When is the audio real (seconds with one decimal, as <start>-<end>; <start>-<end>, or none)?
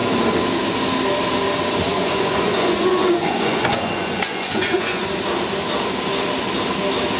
0.0-1.9; 5.1-7.2